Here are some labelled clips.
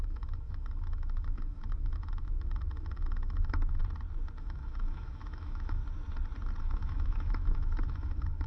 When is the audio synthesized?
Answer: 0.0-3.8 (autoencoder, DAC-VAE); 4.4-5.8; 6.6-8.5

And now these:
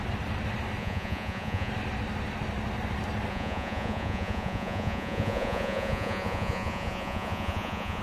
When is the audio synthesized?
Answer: 0.8-1.7 (vocoder, Vocos); 3.3-8.0

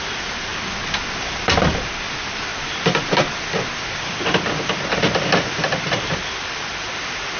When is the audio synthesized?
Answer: none

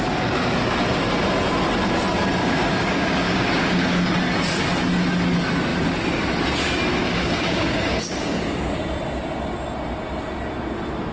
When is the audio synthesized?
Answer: 2.4-4.0 (codec, DAC); 7.0-8.8

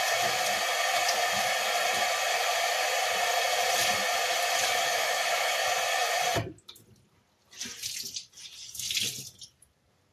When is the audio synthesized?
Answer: 4.9-5.6 (autoencoder, DAC-VAE)

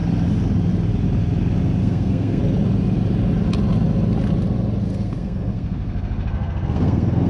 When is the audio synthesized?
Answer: 1.8-2.4 (codec, SNAC); 4.9-7.3

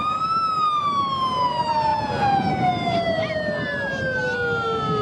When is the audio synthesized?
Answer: 1.9-2.5 (vocoder, Vocos)

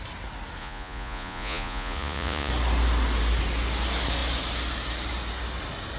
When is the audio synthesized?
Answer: 0.6-2.5 (vocoder, Vocos)